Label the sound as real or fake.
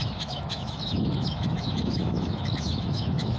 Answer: fake